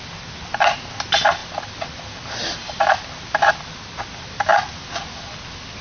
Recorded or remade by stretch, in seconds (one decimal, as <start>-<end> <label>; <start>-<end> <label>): 0.0-5.8 recorded